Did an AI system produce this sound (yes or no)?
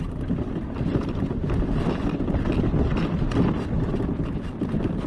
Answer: no